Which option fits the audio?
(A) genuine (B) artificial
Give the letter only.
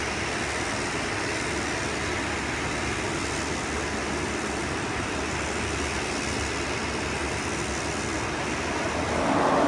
A